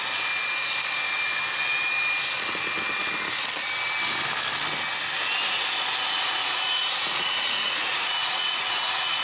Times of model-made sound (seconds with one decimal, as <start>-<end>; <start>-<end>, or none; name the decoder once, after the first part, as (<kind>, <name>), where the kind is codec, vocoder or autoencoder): 6.4-9.2 (vocoder, Vocos)

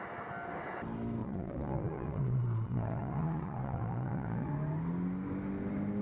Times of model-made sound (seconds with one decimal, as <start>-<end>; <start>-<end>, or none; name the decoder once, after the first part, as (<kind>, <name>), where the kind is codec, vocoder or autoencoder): 1.2-4.5 (vocoder, Vocos)

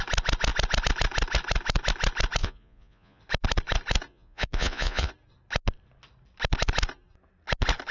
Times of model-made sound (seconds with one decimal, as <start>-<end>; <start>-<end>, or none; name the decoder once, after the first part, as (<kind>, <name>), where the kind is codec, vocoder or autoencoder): 2.4-3.2 (vocoder, Vocos); 4.1-5.1